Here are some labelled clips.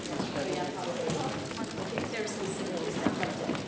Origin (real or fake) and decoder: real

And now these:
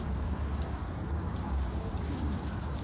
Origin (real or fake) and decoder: fake, codec, DAC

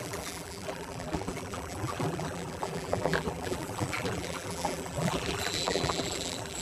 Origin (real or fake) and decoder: fake, vocoder, BigVGAN v2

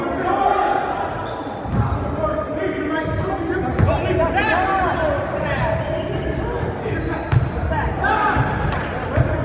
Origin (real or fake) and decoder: real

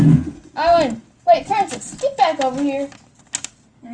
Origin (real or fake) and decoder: real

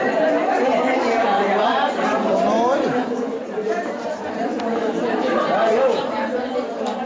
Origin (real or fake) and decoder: fake, vocoder, BigVGAN v2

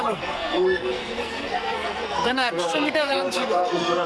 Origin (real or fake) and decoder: fake, codec, SNAC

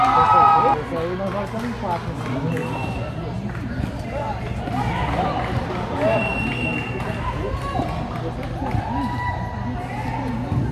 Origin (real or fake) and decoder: real